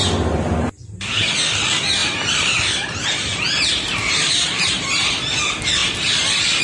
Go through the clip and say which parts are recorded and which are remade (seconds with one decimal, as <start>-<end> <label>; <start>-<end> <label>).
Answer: 0.0-2.0 recorded; 2.0-5.1 remade; 5.1-6.6 recorded